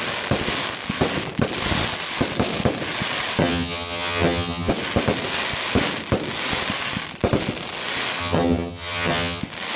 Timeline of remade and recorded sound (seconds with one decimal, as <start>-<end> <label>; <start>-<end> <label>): 0.0-3.4 recorded; 3.4-4.7 remade; 4.7-8.2 recorded; 8.2-9.4 remade; 9.4-9.8 recorded